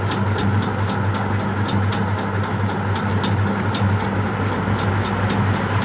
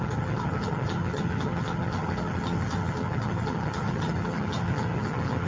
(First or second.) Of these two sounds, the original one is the first